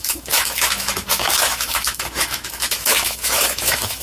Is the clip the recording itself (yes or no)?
no